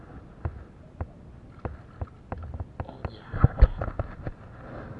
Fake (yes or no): no